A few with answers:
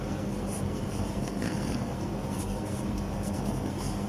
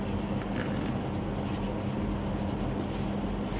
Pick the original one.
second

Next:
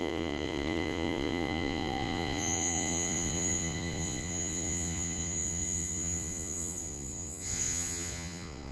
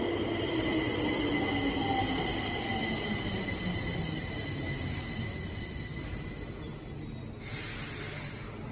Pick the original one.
second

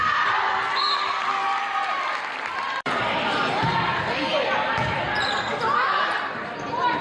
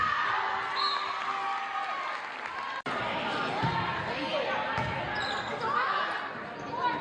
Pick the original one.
second